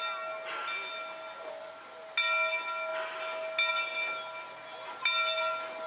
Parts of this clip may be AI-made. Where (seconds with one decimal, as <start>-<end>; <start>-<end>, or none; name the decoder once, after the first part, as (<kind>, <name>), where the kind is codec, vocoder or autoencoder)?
none